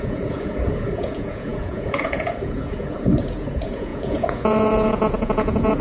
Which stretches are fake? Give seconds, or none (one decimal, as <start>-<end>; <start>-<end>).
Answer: 0.0-5.8